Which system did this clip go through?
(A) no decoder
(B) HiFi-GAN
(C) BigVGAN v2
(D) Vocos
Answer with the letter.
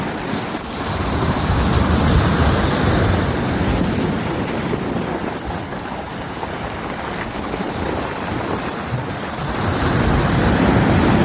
A